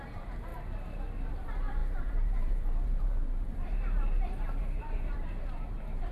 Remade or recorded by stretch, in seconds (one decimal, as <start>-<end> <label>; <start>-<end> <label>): 0.0-0.5 remade; 0.5-1.3 recorded; 1.3-6.1 remade